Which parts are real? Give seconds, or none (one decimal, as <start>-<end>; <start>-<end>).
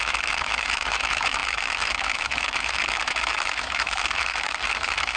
none